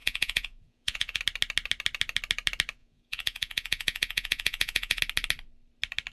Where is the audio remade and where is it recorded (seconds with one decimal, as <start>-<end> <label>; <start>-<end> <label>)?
0.0-1.2 remade; 1.2-2.8 recorded; 2.8-5.0 remade; 5.0-6.1 recorded

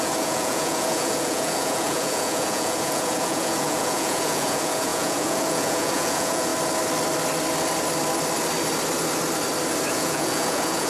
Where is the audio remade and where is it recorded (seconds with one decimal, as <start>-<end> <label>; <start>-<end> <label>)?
0.0-6.5 remade; 6.5-9.9 recorded; 9.9-10.9 remade